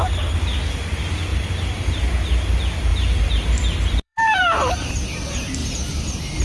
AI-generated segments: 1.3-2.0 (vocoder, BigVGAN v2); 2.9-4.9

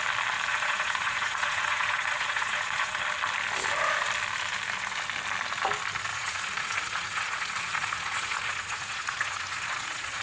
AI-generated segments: 0.5-3.0 (vocoder, Vocos); 6.1-10.2